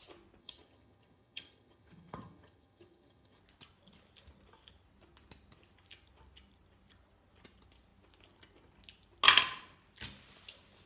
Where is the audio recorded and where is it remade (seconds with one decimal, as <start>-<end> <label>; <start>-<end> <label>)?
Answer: 0.0-0.4 recorded; 0.4-3.4 remade; 3.4-10.9 recorded